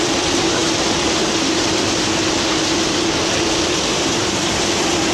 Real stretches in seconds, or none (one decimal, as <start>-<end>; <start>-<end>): 0.0-5.1